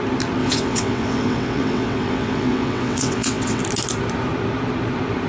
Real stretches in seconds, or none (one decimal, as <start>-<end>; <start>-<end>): 0.0-0.4; 3.6-5.3